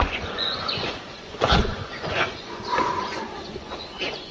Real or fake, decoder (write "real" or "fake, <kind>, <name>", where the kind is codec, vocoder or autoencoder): fake, vocoder, Vocos